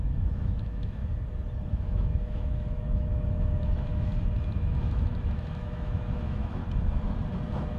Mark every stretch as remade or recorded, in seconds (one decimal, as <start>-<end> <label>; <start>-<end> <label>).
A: 0.0-1.0 remade; 1.0-1.7 recorded; 1.7-4.1 remade; 4.1-4.6 recorded; 4.6-6.6 remade; 6.6-7.8 recorded